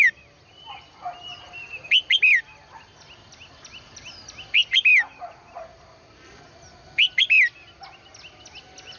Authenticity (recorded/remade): recorded